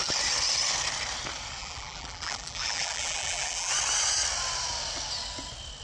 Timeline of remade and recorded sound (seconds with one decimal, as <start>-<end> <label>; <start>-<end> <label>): 0.0-1.6 recorded; 1.6-3.7 remade; 3.7-5.8 recorded